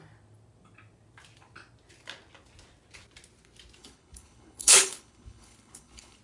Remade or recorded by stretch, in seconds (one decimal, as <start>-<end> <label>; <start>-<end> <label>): 0.0-3.8 recorded; 3.8-6.2 remade